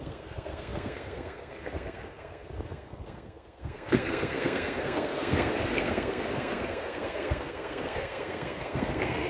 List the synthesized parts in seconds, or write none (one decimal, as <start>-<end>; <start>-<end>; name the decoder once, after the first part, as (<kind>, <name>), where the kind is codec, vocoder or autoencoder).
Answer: 0.0-9.3 (codec, SNAC)